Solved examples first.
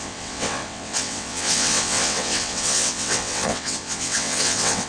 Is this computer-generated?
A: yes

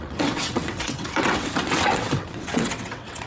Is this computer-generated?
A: yes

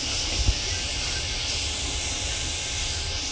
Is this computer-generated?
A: no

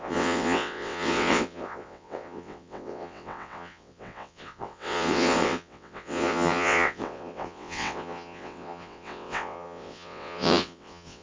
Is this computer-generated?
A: yes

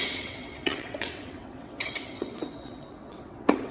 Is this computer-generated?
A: yes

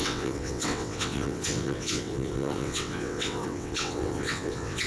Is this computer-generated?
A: yes